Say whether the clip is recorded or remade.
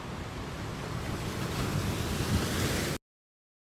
recorded